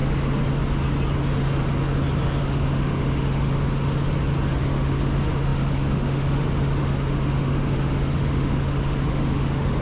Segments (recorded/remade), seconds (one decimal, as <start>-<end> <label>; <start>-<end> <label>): 0.0-2.4 recorded; 2.4-4.1 remade; 4.1-4.6 recorded; 4.6-9.8 remade